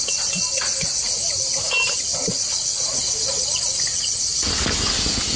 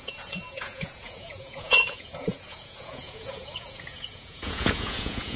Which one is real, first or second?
first